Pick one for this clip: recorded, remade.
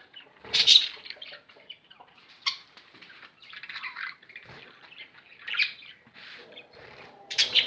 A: remade